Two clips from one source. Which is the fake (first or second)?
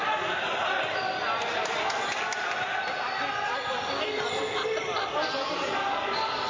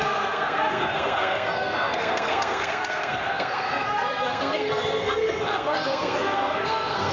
second